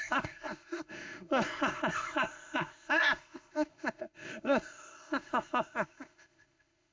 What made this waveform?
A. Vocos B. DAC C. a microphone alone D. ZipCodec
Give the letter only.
D